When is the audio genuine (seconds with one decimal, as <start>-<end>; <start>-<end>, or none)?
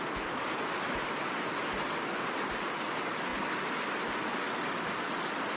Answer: 0.0-5.6